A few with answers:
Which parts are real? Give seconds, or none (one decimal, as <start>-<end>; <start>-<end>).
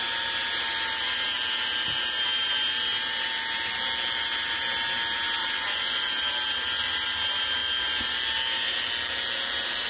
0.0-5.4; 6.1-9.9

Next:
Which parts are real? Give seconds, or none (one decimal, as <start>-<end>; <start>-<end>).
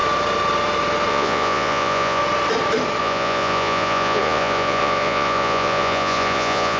0.0-1.1; 2.2-3.0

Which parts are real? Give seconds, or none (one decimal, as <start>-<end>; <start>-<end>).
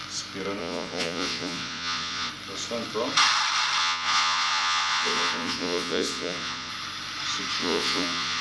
0.0-0.6; 2.3-3.8; 6.7-7.6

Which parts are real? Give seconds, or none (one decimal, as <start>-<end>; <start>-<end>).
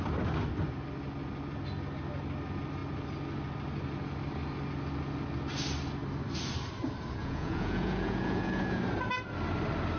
0.0-7.2; 8.8-10.0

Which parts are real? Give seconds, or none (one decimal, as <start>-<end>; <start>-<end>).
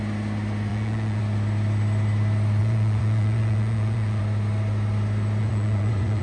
0.0-0.7; 1.2-2.6; 4.2-5.4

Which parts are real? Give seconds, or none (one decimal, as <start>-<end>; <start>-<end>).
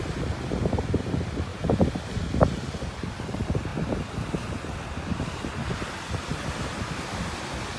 0.0-7.8